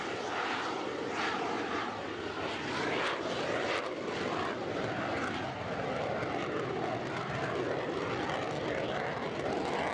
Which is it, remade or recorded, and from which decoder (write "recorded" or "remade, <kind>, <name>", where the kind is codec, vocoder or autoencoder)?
recorded